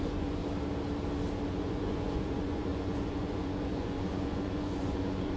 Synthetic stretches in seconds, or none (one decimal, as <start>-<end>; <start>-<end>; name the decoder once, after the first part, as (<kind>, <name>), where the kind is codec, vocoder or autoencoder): 0.0-0.4 (vocoder, Vocos); 1.5-5.4